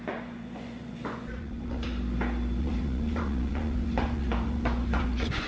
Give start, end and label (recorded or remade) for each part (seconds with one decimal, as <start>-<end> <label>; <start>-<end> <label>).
0.0-1.9 remade; 1.9-2.6 recorded; 2.6-5.5 remade

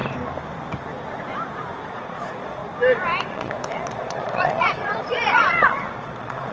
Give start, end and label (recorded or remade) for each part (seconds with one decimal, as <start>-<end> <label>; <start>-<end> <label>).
0.0-1.9 recorded; 1.9-2.6 remade; 2.6-3.3 recorded; 3.3-6.5 remade

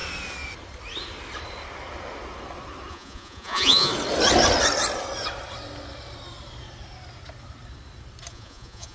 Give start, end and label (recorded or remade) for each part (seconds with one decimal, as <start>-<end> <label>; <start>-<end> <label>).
0.0-2.9 recorded; 2.9-3.9 remade; 3.9-8.3 recorded; 8.3-8.9 remade

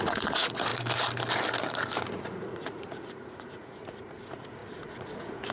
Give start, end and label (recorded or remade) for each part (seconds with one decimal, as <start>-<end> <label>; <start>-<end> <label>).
0.0-0.7 remade; 0.7-2.1 recorded; 2.1-5.5 remade

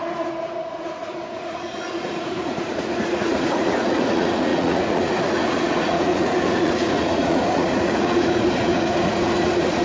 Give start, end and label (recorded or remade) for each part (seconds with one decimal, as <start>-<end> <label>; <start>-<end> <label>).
0.0-9.8 remade